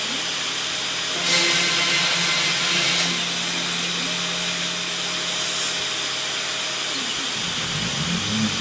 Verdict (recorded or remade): recorded